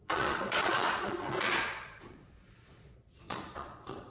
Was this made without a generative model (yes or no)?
no